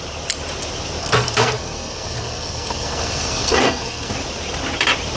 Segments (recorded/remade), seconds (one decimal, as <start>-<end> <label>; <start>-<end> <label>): 0.0-1.0 recorded; 1.0-4.1 remade; 4.1-5.2 recorded